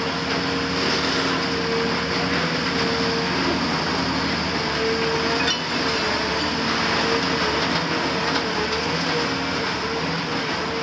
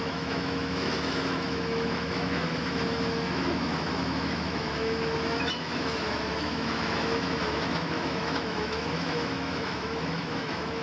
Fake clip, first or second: second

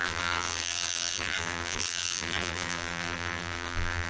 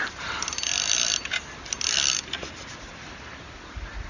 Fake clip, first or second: first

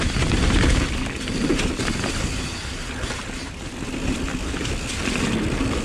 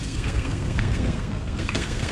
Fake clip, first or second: second